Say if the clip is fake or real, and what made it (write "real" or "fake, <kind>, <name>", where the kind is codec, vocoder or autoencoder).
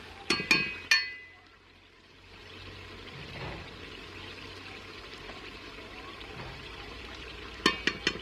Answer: real